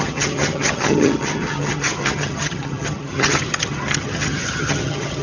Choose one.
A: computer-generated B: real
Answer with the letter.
A